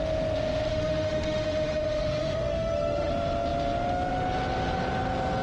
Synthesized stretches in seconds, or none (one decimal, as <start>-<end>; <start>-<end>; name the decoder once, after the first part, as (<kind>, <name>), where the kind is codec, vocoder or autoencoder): 0.7-3.1 (autoencoder, DAC-VAE)